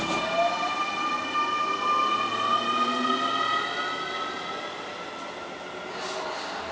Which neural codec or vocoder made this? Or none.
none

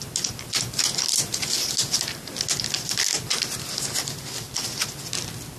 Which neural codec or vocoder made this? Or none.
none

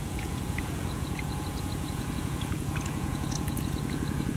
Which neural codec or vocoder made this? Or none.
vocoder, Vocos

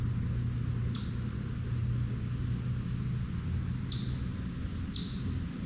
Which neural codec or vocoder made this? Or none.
none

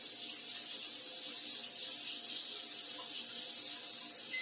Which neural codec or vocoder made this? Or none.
none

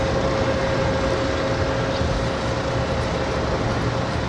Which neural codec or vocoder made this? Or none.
none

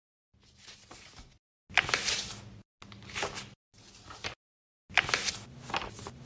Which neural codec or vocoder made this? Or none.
none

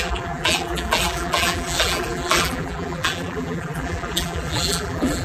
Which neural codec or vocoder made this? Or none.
vocoder, BigVGAN v2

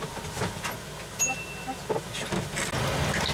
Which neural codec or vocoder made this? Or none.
none